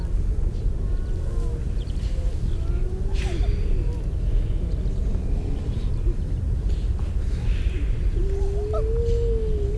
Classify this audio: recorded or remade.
recorded